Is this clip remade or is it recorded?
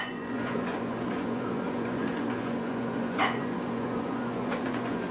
remade